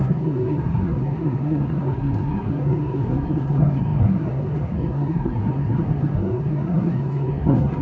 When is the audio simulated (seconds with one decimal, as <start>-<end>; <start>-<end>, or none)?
0.0-7.8